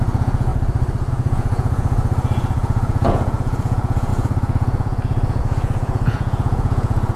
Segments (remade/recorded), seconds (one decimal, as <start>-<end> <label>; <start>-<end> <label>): 0.0-0.5 remade; 0.5-1.1 recorded; 1.1-7.2 remade